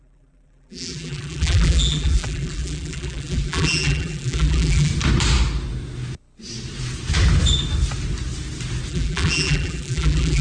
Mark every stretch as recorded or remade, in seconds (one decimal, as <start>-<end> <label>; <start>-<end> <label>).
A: 0.0-4.9 remade; 4.9-8.9 recorded; 8.9-10.4 remade